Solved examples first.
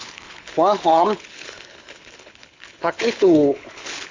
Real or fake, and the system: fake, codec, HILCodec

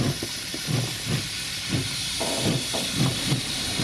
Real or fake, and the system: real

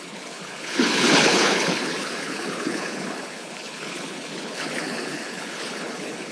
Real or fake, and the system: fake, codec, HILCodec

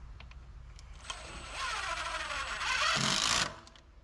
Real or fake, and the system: real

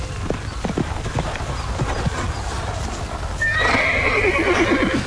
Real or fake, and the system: real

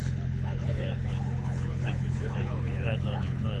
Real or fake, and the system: fake, codec, HILCodec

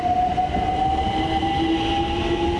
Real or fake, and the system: real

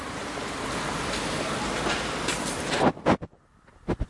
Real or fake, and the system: real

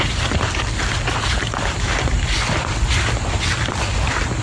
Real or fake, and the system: real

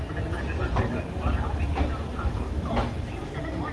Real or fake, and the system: real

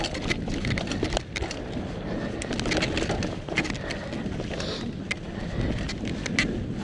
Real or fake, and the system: real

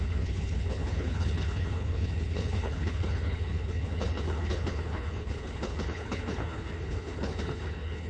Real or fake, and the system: fake, codec, HILCodec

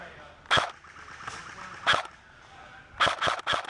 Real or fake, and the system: real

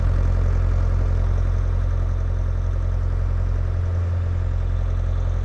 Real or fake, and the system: real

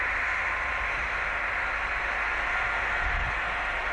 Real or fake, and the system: real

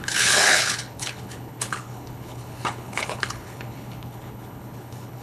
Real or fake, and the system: fake, codec, HILCodec